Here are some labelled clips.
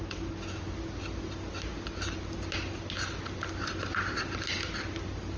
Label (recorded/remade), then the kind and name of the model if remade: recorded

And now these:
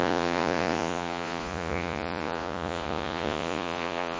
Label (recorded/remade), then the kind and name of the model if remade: remade, vocoder, Vocos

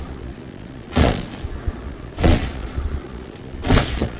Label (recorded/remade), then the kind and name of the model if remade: remade, vocoder, Vocos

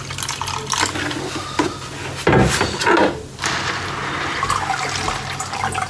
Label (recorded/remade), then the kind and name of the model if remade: recorded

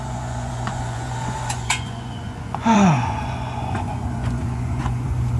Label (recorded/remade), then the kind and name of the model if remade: remade, vocoder, Vocos